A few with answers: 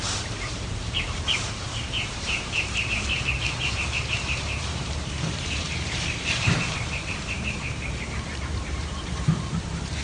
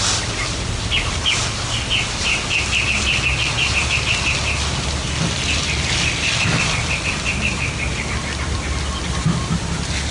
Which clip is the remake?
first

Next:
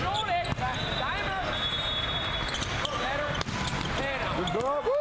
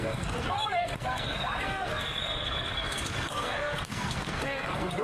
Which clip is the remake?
second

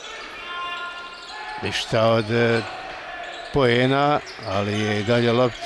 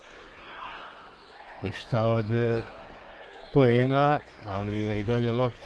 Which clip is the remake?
second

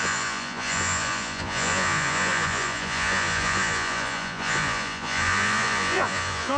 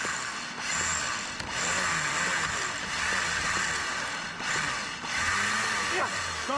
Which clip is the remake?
first